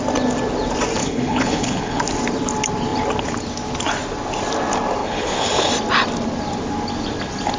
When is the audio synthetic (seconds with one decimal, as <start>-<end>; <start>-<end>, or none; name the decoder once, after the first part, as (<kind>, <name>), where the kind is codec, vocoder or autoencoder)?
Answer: 1.0-2.0 (codec, HILCodec); 5.0-5.7